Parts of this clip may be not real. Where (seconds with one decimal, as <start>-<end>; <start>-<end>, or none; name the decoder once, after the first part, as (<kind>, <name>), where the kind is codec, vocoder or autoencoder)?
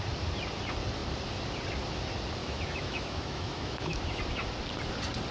2.4-4.2 (autoencoder, DAC-VAE)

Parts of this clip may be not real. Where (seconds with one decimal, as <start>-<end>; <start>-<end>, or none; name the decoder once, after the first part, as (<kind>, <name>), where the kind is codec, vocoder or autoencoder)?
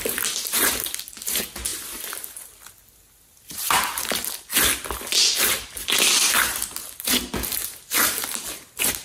none